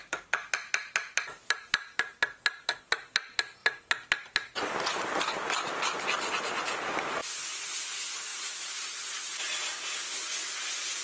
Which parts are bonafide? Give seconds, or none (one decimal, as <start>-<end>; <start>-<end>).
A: 0.0-3.6; 4.1-7.2; 7.7-8.3; 9.0-11.0